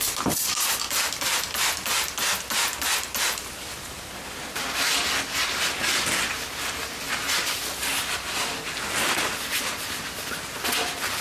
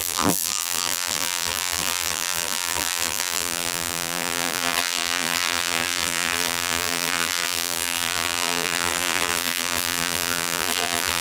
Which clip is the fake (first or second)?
second